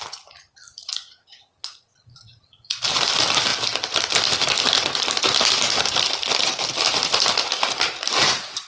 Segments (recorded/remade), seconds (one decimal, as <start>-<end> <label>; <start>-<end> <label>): 0.0-0.8 recorded; 0.8-2.8 remade; 2.8-8.7 recorded